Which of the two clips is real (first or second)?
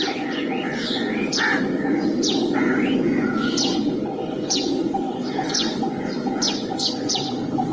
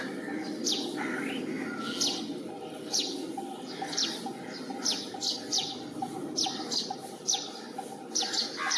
second